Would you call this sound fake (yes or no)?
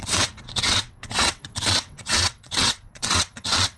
yes